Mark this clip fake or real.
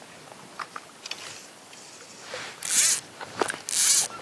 real